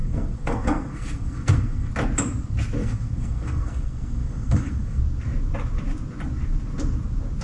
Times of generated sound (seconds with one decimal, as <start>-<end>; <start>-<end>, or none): 0.0-1.9; 2.8-5.0